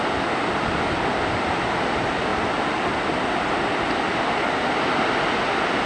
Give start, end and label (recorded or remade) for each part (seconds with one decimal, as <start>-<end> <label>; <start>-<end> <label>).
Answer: 0.0-5.9 recorded